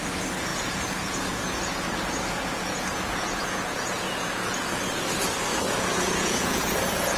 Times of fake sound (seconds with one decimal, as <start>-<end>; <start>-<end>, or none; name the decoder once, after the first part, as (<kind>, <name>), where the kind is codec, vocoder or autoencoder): 0.5-4.8 (vocoder, Vocos); 5.5-7.2